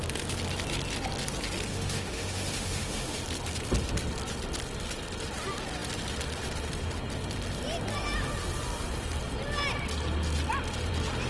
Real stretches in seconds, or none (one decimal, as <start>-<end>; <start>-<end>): 0.0-1.7; 3.2-11.3